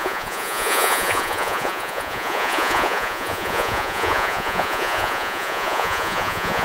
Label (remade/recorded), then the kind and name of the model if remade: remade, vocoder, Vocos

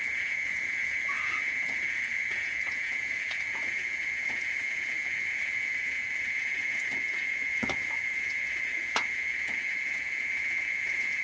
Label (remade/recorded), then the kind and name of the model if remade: remade, vocoder, Vocos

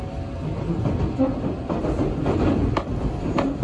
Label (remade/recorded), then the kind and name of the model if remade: recorded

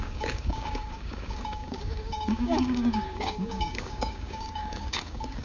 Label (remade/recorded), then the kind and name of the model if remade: remade, codec, DAC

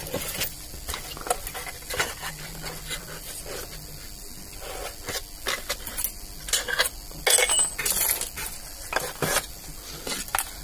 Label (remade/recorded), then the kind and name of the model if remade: recorded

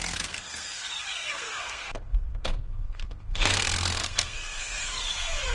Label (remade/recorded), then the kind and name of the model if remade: remade, codec, SNAC